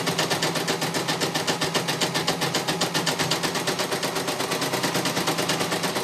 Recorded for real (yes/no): yes